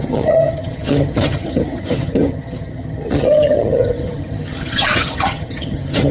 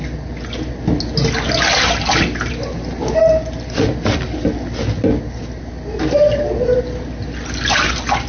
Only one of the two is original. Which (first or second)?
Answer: second